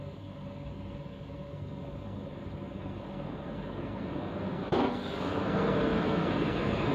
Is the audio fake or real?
fake